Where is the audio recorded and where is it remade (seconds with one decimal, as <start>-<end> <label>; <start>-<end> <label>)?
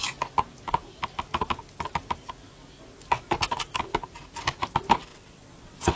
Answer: 0.0-5.1 recorded; 5.1-6.0 remade